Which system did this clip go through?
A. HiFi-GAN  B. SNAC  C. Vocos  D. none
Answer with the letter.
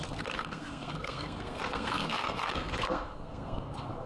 B